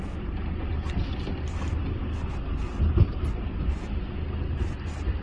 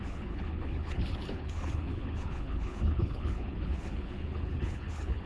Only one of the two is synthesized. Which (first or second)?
second